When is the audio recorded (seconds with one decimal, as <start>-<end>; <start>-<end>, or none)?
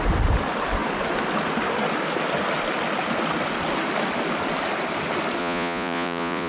0.0-5.4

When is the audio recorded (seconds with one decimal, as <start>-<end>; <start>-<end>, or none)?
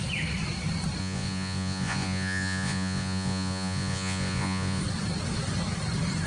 0.0-1.0; 4.8-6.3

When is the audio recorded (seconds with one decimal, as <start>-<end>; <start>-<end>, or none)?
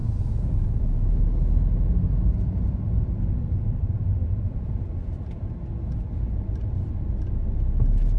0.8-4.2; 4.8-8.2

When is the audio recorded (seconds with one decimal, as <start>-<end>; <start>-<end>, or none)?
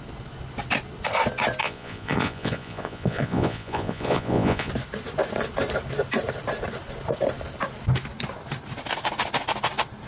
0.0-1.6; 4.7-10.1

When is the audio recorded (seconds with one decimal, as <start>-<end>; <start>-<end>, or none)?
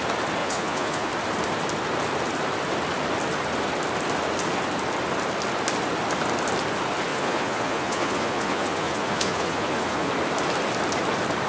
0.0-0.4; 1.1-7.1; 10.1-11.5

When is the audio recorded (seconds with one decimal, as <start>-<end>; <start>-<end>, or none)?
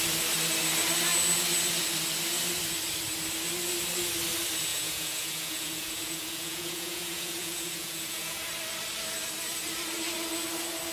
0.0-4.7; 8.5-10.9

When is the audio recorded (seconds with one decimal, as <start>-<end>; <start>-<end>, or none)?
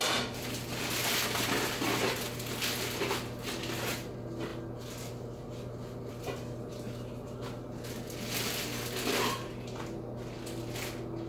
0.0-11.3